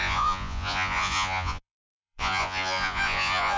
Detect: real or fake fake